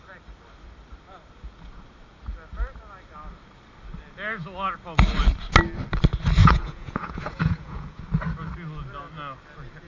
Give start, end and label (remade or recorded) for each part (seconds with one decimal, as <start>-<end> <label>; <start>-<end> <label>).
0.0-6.4 recorded; 6.4-8.0 remade; 8.0-9.9 recorded